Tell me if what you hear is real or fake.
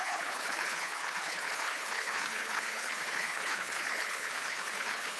fake